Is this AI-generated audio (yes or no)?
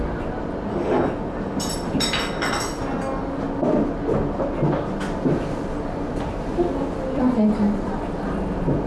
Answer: no